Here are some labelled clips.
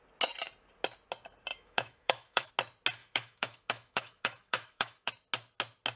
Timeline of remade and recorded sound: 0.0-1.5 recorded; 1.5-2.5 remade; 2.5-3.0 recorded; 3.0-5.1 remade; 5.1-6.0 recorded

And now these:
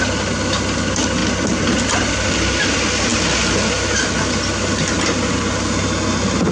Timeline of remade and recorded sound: 0.0-6.5 recorded

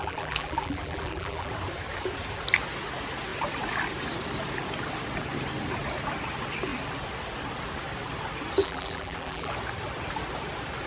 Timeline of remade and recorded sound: 0.0-1.5 remade; 1.5-8.6 recorded; 8.6-9.5 remade; 9.5-10.9 recorded

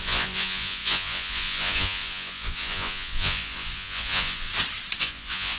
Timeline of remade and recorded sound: 0.0-4.5 remade; 4.5-5.0 recorded; 5.0-5.6 remade

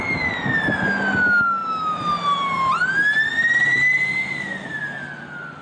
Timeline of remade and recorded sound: 0.0-5.6 recorded

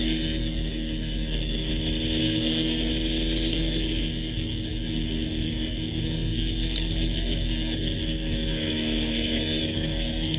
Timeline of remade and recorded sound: 0.0-1.7 remade; 1.7-2.2 recorded; 2.2-2.9 remade; 2.9-3.5 recorded; 3.5-10.4 remade

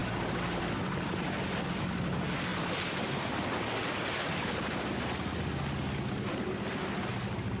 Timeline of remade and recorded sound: 0.0-0.6 remade; 0.6-7.6 recorded